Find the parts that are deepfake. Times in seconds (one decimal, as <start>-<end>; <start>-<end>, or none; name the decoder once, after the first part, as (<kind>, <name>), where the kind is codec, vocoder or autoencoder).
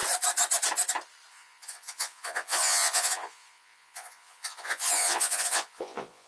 1.3-6.3 (vocoder, Vocos)